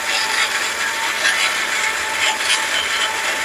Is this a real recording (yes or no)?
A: yes